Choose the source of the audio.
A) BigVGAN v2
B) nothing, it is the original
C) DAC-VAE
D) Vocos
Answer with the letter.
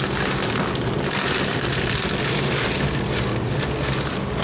B